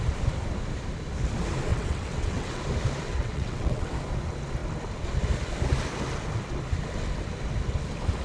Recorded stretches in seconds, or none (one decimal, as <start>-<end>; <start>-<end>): 0.0-1.7; 2.6-3.1; 3.9-8.2